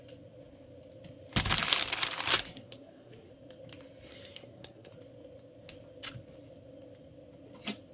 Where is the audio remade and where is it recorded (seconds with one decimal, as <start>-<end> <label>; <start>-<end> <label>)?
0.0-2.5 recorded; 2.5-3.3 remade; 3.3-4.1 recorded; 4.1-4.9 remade; 4.9-7.9 recorded